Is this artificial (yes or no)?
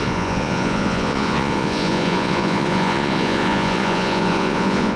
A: yes